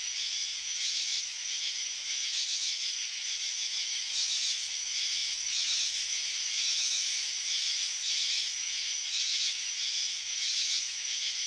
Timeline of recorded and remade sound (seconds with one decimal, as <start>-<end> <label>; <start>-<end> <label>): 0.0-11.5 remade